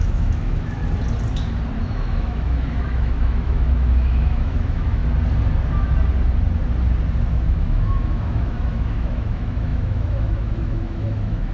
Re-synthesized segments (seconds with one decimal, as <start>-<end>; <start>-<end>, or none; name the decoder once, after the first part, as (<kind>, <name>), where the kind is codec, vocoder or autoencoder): 0.0-0.8 (autoencoder, DAC-VAE); 1.8-5.0; 7.3-11.5